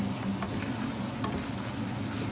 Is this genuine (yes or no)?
yes